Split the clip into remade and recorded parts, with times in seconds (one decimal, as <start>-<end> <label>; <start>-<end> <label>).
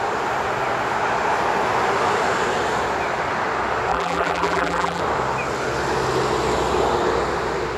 0.0-3.9 recorded; 3.9-5.0 remade; 5.0-7.8 recorded